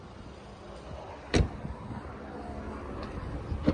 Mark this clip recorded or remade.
recorded